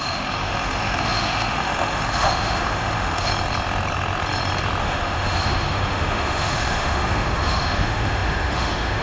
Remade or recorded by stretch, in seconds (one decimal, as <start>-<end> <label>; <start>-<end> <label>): 0.0-3.3 remade; 3.3-4.8 recorded; 4.8-9.0 remade

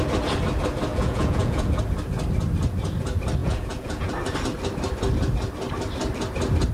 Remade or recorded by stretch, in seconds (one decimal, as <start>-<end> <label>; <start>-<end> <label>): 0.0-0.9 recorded; 0.9-1.8 remade; 1.8-3.4 recorded; 3.4-4.1 remade; 4.1-6.7 recorded

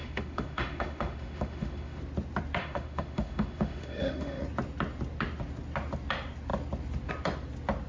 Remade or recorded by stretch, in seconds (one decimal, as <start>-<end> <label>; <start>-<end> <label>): 0.0-2.0 remade; 2.0-2.6 recorded; 2.6-4.4 remade; 4.4-7.9 recorded

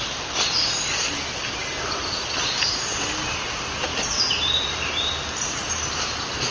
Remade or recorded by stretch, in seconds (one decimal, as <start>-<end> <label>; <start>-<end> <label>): 0.0-6.5 recorded

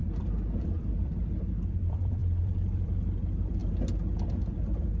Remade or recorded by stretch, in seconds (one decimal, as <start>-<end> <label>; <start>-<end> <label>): 0.0-0.8 recorded; 0.8-3.6 remade; 3.6-4.5 recorded; 4.5-5.0 remade

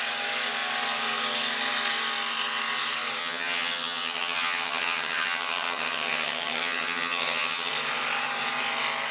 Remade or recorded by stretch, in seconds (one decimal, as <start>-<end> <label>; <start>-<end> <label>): 0.0-3.2 recorded; 3.2-7.7 remade; 7.7-9.1 recorded

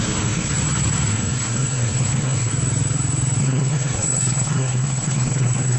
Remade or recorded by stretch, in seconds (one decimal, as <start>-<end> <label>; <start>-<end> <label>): 0.0-0.5 remade; 0.5-1.1 recorded; 1.1-2.5 remade; 2.5-3.4 recorded; 3.4-5.8 remade

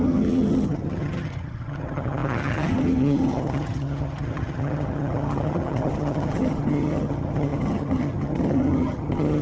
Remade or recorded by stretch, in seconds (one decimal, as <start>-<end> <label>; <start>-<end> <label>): 0.0-9.4 remade